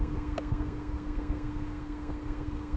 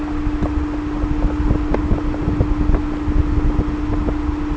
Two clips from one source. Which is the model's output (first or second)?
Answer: first